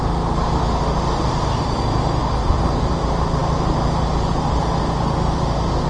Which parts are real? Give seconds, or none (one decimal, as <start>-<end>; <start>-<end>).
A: 0.0-5.9